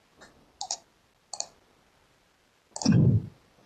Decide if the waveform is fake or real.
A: real